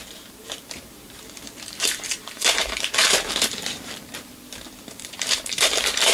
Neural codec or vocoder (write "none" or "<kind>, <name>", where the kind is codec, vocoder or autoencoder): vocoder, BigVGAN v2